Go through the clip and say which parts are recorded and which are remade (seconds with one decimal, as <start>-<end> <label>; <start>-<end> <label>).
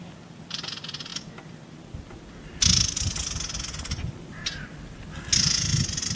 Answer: 0.0-6.2 recorded